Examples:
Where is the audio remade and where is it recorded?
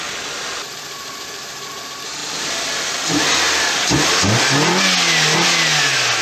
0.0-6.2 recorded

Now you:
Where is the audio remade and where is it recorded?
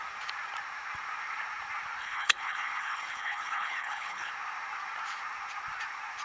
0.0-2.0 recorded; 2.0-4.3 remade; 4.3-6.2 recorded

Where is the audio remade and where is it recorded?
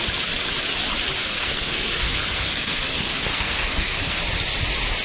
0.0-1.2 recorded; 1.2-4.2 remade; 4.2-5.0 recorded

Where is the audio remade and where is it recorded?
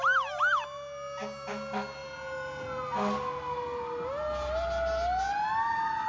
0.0-6.1 recorded